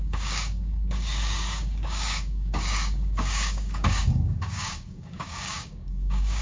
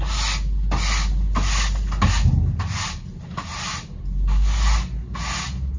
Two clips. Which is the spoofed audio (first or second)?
first